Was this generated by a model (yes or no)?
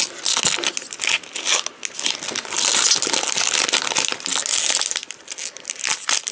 no